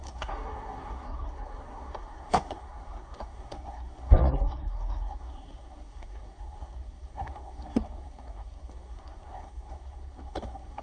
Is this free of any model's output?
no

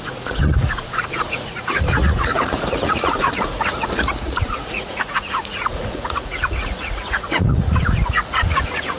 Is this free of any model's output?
no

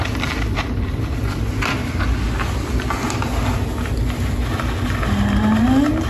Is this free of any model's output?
yes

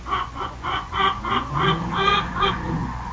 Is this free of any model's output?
no